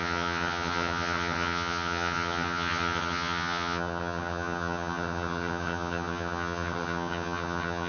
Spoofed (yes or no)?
yes